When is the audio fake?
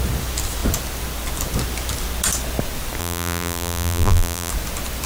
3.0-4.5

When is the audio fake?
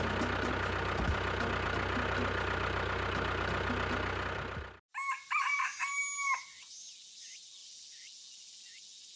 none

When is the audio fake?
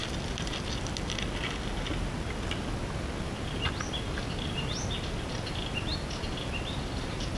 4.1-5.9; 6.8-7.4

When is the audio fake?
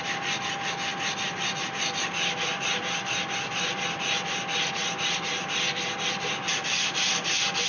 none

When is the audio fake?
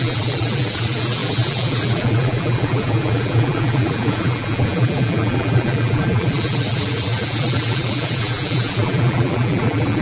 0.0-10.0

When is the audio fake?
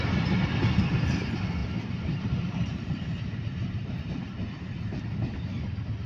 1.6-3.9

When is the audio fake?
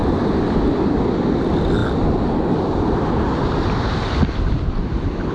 0.0-0.8